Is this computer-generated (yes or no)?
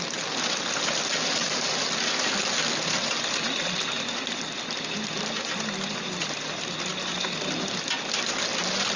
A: no